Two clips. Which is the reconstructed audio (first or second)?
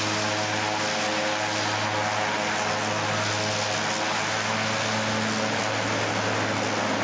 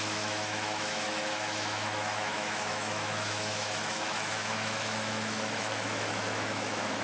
second